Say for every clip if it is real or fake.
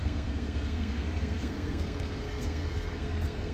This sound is fake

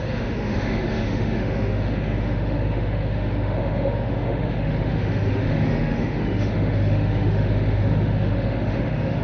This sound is fake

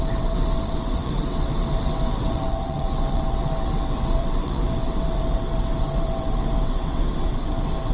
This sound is fake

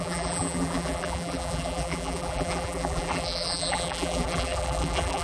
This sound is fake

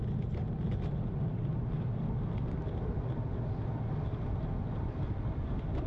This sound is real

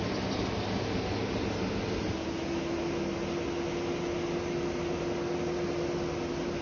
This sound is real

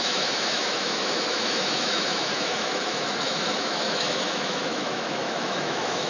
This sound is fake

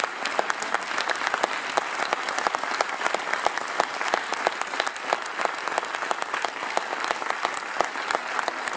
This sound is real